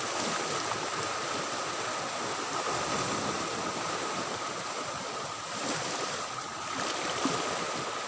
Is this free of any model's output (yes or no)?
yes